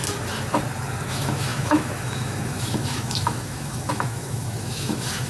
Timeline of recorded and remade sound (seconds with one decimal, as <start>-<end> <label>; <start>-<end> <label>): 0.0-1.1 recorded; 1.1-5.3 remade